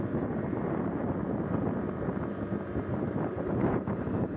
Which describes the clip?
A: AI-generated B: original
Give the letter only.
A